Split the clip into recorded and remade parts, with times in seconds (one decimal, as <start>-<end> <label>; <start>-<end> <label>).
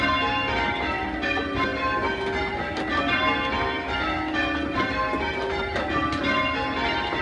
0.0-7.2 recorded